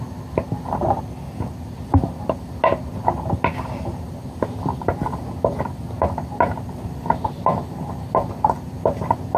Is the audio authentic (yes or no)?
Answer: yes